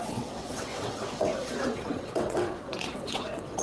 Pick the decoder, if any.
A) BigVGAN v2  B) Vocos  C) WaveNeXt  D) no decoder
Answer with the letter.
C